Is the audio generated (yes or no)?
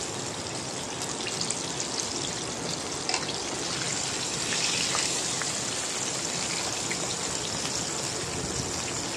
no